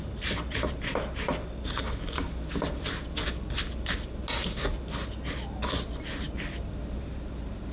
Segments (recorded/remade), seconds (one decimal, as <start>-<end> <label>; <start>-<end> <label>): 0.0-1.3 remade; 1.3-5.9 recorded; 5.9-7.7 remade